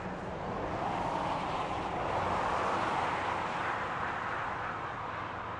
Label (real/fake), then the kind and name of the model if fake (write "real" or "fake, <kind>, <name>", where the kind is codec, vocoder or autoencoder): real